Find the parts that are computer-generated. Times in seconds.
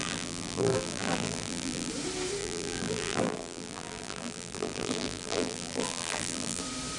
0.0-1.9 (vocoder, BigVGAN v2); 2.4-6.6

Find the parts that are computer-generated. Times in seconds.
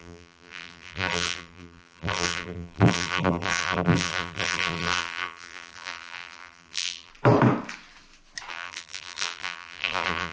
0.0-7.1 (vocoder, BigVGAN v2); 8.5-10.3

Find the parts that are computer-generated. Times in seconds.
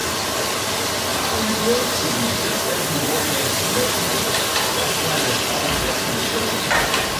0.0-0.6 (vocoder, BigVGAN v2); 1.1-3.3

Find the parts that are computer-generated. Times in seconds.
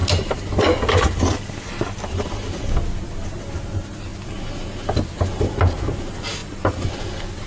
6.4-6.9 (vocoder, BigVGAN v2)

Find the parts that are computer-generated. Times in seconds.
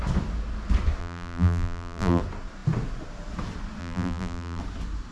1.0-2.2 (vocoder, BigVGAN v2); 3.8-4.6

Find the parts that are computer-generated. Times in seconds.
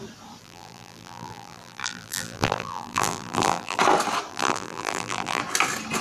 0.4-3.8 (vocoder, BigVGAN v2); 4.3-5.4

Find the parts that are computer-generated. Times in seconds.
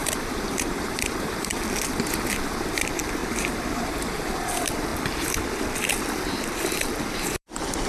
0.0-3.2 (vocoder, BigVGAN v2); 4.3-4.9; 6.0-7.9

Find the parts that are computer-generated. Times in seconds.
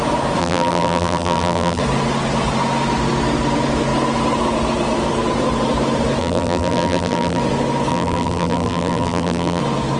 0.4-1.8 (vocoder, BigVGAN v2); 6.2-7.4; 7.9-9.6